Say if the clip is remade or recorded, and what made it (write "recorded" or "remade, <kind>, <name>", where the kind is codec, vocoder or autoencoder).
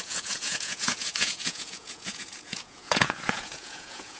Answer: remade, vocoder, Vocos